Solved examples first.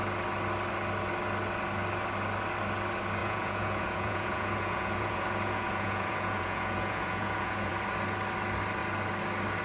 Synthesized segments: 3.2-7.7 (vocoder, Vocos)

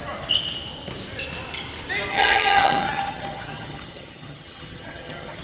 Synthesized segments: 2.1-5.4 (vocoder, HiFi-GAN)

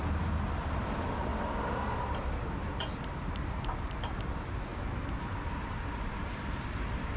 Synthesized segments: 0.0-1.3 (vocoder, BigVGAN v2); 2.0-4.7; 5.5-7.2

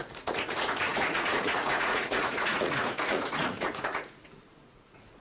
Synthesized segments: 0.0-5.2 (vocoder, Vocos)

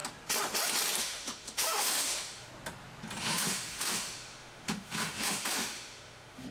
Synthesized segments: 1.0-2.5 (autoencoder, DAC-VAE); 3.2-6.5